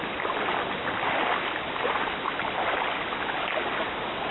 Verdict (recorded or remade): recorded